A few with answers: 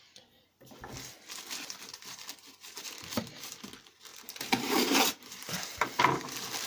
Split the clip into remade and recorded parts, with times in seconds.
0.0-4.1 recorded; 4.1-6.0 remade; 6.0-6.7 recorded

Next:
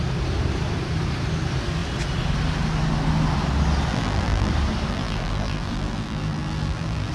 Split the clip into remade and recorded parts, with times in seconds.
0.0-3.9 recorded; 3.9-4.5 remade; 4.5-4.9 recorded; 4.9-7.1 remade